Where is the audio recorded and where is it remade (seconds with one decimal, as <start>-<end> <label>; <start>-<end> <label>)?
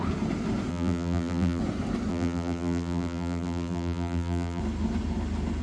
0.0-0.7 recorded; 0.7-1.6 remade; 1.6-2.1 recorded; 2.1-4.6 remade; 4.6-5.6 recorded